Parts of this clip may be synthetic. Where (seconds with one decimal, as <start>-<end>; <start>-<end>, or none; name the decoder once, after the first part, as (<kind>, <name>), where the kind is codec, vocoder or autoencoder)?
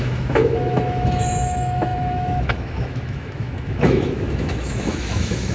0.0-5.5 (autoencoder, DAC-VAE)